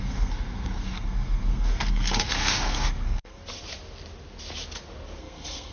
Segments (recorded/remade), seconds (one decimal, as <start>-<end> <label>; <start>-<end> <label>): 0.0-3.4 remade; 3.4-5.2 recorded; 5.2-5.7 remade